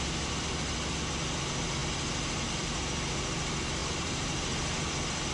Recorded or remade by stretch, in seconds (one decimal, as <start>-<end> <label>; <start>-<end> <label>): 0.0-3.8 recorded; 3.8-5.3 remade